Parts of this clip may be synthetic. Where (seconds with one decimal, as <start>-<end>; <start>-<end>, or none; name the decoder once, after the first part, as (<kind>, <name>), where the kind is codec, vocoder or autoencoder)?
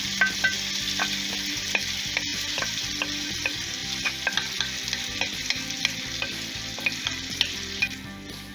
2.3-2.9 (vocoder, BigVGAN v2)